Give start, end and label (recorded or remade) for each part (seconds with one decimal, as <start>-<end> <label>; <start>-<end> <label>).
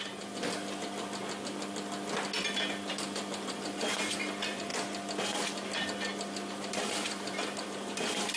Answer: 0.0-1.2 remade; 1.2-2.9 recorded; 2.9-4.7 remade; 4.7-6.5 recorded; 6.5-8.4 remade